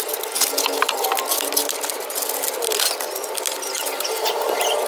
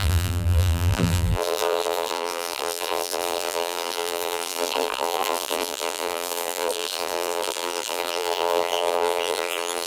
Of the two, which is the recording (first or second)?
first